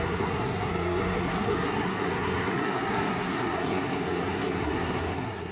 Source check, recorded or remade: remade